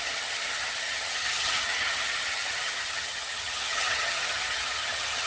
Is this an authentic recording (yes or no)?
no